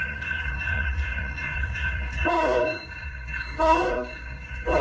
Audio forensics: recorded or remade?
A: remade